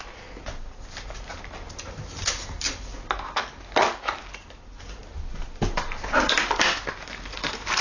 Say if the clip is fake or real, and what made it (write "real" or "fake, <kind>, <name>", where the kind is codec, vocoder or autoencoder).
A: real